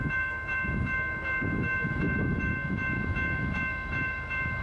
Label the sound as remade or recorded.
remade